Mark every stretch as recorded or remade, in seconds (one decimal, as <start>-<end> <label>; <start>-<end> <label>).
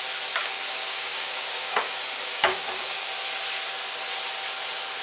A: 0.0-0.4 recorded; 0.4-3.1 remade; 3.1-5.0 recorded